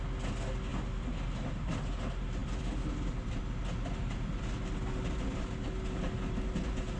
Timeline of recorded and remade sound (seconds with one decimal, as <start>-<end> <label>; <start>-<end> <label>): 0.0-7.0 recorded

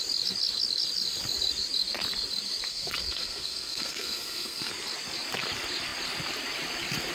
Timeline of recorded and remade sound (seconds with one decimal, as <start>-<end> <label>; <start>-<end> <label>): 0.0-2.7 recorded; 2.7-4.7 remade; 4.7-7.1 recorded